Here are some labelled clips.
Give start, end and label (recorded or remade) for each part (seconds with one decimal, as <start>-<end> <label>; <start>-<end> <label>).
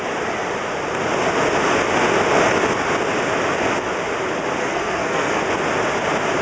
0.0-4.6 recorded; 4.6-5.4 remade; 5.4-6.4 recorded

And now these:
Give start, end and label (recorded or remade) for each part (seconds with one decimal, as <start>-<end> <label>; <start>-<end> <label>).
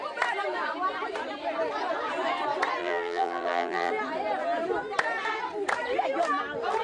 0.0-2.8 recorded; 2.8-3.9 remade; 3.9-6.8 recorded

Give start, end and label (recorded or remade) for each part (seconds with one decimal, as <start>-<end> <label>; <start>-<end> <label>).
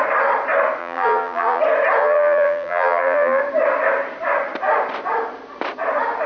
0.0-0.8 recorded; 0.8-1.6 remade; 1.6-2.0 recorded; 2.0-3.4 remade; 3.4-6.3 recorded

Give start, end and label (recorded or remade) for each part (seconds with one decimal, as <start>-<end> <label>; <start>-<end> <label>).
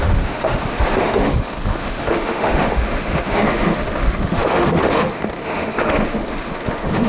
0.0-7.1 remade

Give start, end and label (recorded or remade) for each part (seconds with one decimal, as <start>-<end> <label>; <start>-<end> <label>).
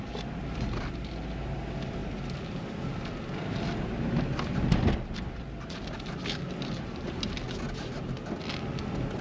0.0-9.2 recorded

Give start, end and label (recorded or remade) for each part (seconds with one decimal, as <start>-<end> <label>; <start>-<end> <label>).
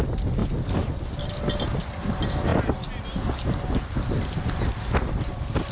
0.0-5.7 recorded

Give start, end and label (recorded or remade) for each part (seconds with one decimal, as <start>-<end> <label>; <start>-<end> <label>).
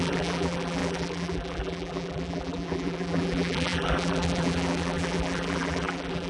0.0-6.3 remade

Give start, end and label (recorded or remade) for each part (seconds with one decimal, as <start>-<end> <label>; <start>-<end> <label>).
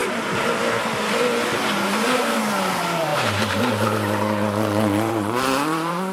0.0-1.5 recorded; 1.5-6.1 remade